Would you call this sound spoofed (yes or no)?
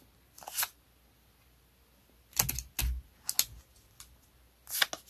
no